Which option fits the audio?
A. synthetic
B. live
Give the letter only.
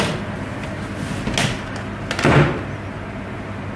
B